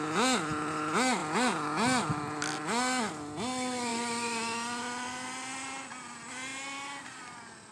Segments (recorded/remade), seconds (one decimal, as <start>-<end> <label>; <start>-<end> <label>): 0.0-7.7 recorded